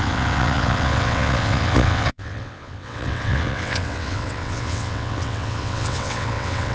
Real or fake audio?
fake